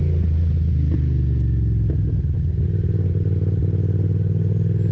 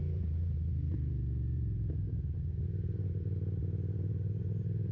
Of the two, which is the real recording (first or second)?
first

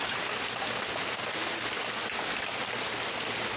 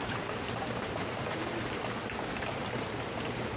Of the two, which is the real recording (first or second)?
first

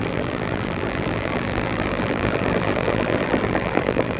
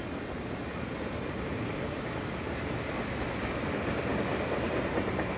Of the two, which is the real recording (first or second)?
second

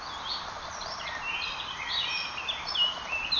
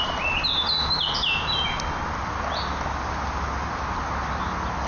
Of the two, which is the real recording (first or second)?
second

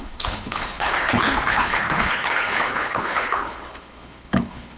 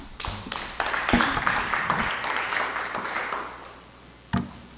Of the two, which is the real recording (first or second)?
second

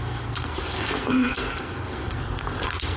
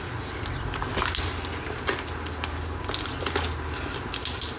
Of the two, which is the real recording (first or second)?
second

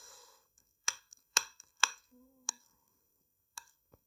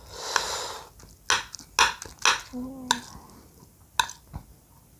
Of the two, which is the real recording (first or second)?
second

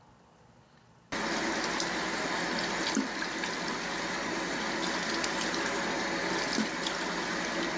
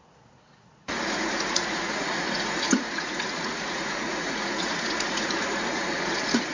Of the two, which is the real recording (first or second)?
first